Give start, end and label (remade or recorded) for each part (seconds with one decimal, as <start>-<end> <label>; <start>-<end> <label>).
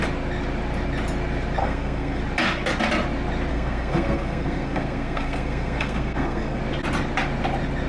0.0-1.6 recorded; 1.6-2.2 remade; 2.2-3.5 recorded; 3.5-6.6 remade; 6.6-7.9 recorded